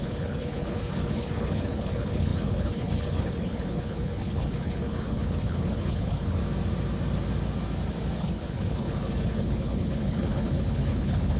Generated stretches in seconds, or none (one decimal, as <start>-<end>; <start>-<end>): 0.0-6.4; 8.2-11.4